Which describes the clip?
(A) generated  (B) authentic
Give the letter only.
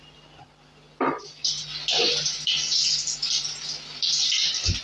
B